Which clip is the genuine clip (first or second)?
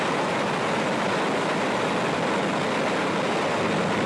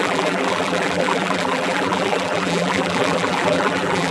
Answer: first